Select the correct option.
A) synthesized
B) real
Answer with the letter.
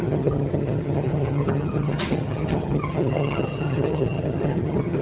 A